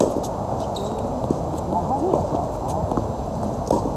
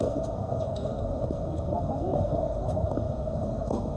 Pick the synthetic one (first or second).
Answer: second